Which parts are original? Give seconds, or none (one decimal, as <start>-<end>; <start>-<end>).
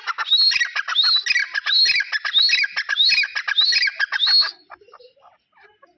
0.0-6.0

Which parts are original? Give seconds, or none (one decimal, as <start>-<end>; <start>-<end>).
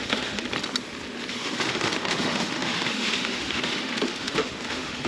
0.5-1.3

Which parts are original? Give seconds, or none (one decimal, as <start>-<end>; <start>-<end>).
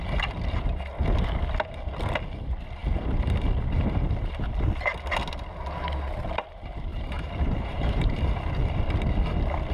0.0-6.9; 8.2-9.7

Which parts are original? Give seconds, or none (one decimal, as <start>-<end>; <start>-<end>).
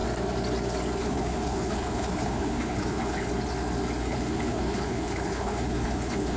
0.0-1.0; 3.3-4.0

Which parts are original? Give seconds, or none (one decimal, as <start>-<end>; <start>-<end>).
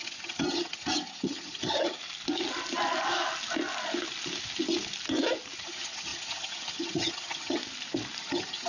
2.0-5.6; 7.6-8.2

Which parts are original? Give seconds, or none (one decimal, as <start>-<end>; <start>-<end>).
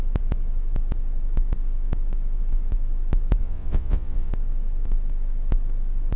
0.0-3.4; 4.3-6.2